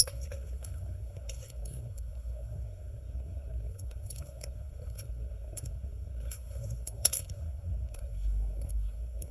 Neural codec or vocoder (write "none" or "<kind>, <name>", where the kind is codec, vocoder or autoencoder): codec, SNAC